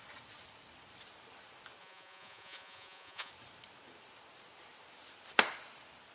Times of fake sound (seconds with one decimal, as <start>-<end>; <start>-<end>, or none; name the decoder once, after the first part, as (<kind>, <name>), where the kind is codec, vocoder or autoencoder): 1.8-3.3 (vocoder, Vocos)